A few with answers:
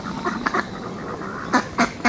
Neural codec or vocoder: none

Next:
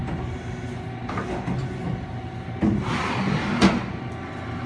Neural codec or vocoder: none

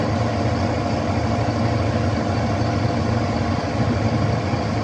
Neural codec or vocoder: none